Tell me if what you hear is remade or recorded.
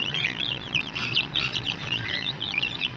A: remade